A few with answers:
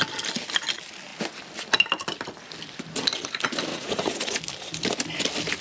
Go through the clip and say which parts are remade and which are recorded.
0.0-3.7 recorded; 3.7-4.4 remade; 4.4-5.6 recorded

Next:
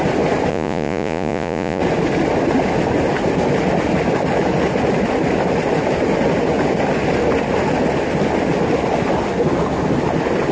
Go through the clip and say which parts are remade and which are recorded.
0.0-0.5 recorded; 0.5-1.8 remade; 1.8-10.5 recorded